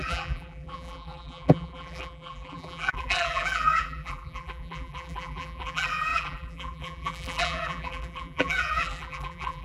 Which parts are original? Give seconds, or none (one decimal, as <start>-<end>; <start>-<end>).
none